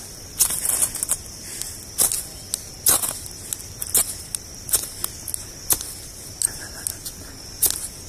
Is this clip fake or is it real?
real